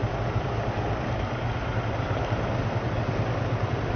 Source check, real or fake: real